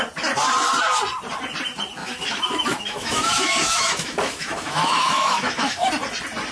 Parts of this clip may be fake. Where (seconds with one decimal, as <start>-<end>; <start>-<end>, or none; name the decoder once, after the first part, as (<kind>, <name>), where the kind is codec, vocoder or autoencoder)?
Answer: 2.0-5.9 (autoencoder, DAC-VAE)